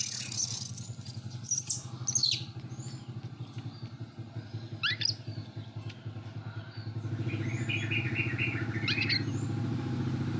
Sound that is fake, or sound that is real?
real